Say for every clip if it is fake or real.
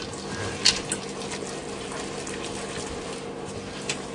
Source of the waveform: real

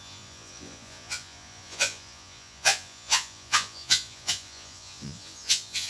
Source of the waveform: fake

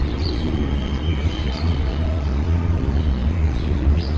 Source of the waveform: fake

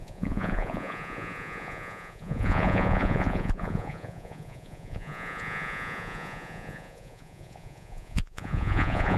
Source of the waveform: fake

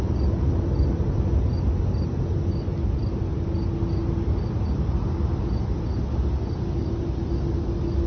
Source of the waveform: real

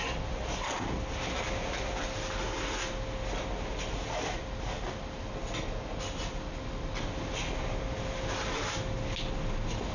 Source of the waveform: real